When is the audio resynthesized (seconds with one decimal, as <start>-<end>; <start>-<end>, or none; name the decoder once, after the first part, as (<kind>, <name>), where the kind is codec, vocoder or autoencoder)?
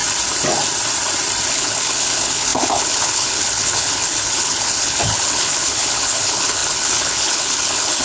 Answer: 1.5-8.0 (codec, HILCodec)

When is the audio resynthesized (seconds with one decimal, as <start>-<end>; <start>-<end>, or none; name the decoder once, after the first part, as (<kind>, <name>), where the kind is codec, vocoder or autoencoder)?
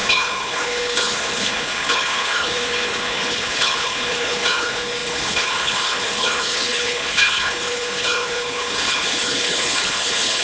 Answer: 0.0-10.4 (codec, HILCodec)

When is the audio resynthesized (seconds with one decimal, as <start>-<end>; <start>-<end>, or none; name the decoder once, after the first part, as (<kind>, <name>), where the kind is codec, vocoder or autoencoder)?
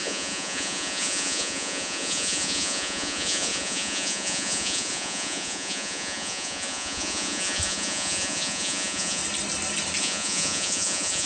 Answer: 0.0-9.2 (vocoder, Vocos); 10.0-11.3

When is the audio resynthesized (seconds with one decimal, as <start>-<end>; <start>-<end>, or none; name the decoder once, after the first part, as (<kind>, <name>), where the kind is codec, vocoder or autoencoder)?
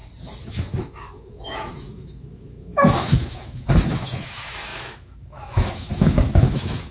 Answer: 0.5-6.9 (autoencoder, DAC-VAE)